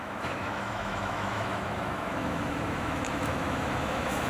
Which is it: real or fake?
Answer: fake